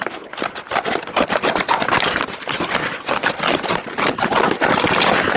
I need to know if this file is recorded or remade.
recorded